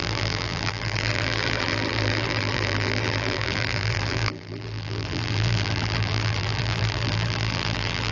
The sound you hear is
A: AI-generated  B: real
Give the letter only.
A